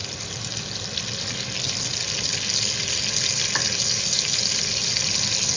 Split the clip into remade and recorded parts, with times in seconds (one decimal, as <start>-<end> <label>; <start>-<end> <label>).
0.0-5.6 recorded